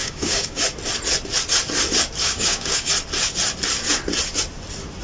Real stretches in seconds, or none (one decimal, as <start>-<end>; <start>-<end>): 0.6-2.2; 2.9-5.0